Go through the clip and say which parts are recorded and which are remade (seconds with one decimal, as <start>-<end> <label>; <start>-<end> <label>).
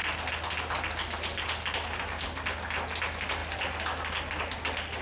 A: 0.0-5.0 recorded